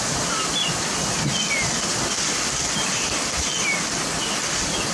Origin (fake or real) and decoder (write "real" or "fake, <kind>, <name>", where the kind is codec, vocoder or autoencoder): real